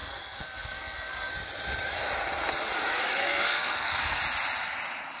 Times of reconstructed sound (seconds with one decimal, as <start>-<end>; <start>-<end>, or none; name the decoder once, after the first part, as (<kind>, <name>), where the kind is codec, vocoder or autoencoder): 0.0-1.3 (codec, SNAC); 3.2-4.2